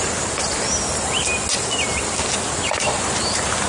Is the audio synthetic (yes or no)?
no